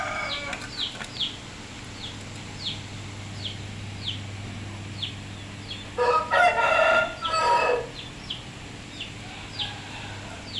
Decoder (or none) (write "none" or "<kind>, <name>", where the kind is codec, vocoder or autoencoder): none